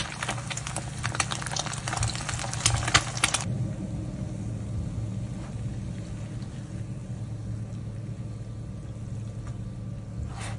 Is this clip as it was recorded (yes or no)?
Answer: yes